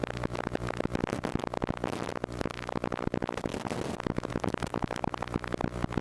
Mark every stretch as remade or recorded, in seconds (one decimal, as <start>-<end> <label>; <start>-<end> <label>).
0.0-6.0 recorded